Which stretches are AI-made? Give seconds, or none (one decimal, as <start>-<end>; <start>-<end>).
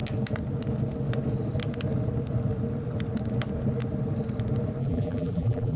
4.8-5.8